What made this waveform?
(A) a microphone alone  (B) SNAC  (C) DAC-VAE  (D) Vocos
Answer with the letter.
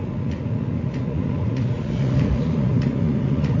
D